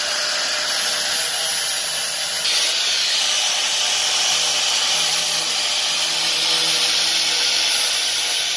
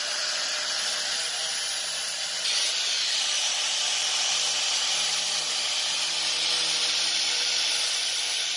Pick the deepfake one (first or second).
second